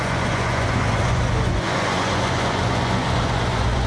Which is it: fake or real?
fake